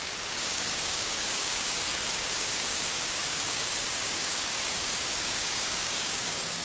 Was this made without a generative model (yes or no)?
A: no